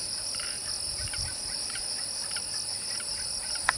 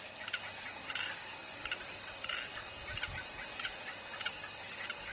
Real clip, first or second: second